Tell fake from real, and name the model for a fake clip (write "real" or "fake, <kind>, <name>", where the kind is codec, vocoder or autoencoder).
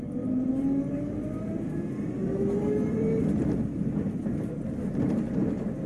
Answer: real